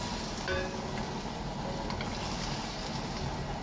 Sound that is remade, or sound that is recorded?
recorded